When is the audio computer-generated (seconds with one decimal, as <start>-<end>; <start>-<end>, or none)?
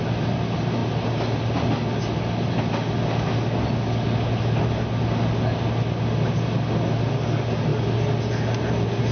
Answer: none